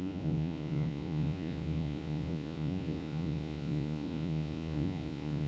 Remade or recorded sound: remade